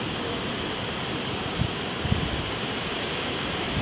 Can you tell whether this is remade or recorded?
recorded